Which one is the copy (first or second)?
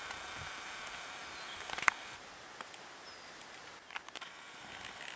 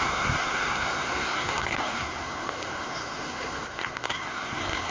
second